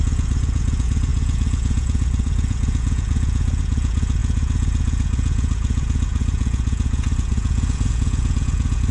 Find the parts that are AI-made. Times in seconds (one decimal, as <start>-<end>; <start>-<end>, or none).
0.0-8.9